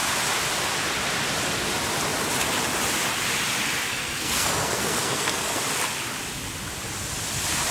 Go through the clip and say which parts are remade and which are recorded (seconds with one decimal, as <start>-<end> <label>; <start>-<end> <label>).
0.0-3.9 recorded; 3.9-5.6 remade; 5.6-7.7 recorded